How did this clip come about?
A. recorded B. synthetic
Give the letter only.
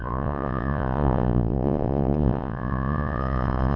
B